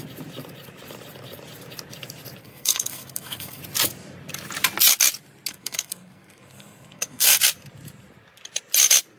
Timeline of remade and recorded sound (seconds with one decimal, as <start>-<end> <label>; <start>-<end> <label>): 0.0-2.4 recorded; 2.4-3.6 remade; 3.6-5.5 recorded; 5.5-7.4 remade; 7.4-9.2 recorded